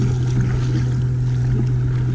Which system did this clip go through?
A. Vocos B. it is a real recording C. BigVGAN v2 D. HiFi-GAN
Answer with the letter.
B